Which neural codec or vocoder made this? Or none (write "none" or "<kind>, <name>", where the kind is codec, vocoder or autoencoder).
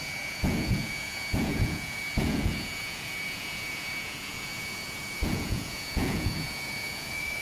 vocoder, Vocos